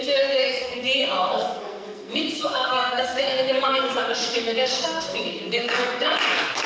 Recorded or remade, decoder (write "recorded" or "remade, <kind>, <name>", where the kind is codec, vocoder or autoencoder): remade, codec, SNAC